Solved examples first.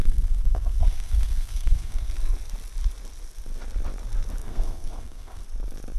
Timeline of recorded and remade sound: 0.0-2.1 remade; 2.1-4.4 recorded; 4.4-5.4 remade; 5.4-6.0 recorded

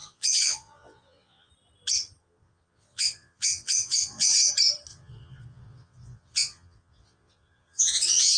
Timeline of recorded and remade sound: 0.0-1.5 remade; 1.5-2.2 recorded; 2.2-4.5 remade; 4.5-4.9 recorded; 4.9-8.4 remade

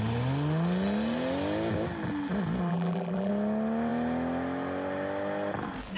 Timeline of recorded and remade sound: 0.0-2.7 recorded; 2.7-3.3 remade; 3.3-6.0 recorded